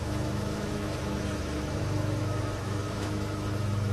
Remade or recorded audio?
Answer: remade